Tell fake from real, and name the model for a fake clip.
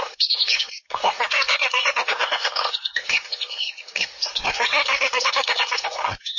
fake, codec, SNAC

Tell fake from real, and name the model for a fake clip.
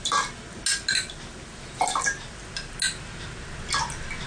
real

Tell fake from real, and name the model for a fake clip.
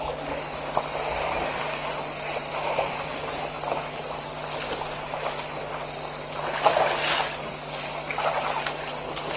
real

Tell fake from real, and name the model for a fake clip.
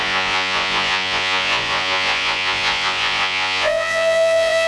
fake, vocoder, Vocos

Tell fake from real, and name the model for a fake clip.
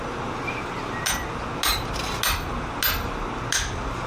real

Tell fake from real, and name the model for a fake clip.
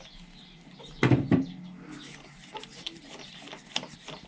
real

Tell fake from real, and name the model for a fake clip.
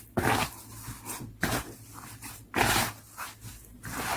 real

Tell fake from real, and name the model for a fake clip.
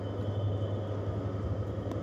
real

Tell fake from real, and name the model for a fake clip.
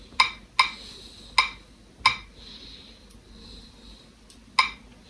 real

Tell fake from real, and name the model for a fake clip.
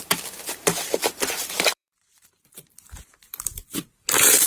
fake, vocoder, BigVGAN v2